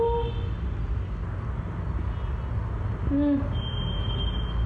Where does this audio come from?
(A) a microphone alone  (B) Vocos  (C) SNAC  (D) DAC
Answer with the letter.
A